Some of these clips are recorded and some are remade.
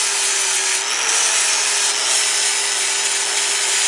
recorded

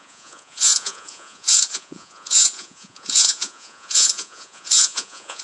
remade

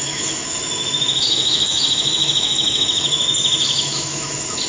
remade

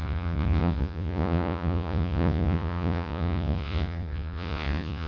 remade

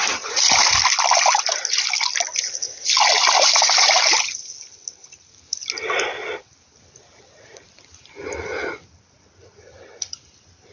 recorded